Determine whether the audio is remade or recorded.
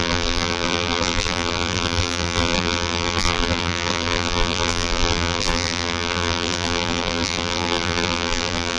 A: remade